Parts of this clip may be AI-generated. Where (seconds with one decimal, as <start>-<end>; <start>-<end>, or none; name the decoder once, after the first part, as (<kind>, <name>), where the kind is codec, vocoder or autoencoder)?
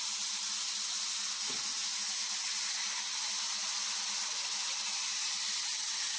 none